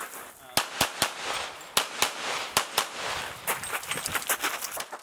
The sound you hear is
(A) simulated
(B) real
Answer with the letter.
B